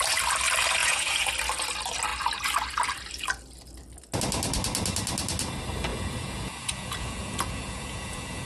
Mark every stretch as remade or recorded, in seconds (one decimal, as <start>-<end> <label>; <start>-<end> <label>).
0.0-0.8 recorded; 0.8-1.3 remade; 1.3-5.9 recorded; 5.9-8.5 remade